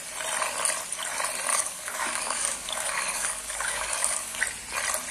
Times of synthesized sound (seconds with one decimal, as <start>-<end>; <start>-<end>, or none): 1.5-4.4